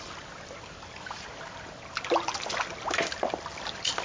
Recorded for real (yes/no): yes